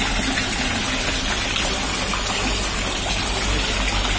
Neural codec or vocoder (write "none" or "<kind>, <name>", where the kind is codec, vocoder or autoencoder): none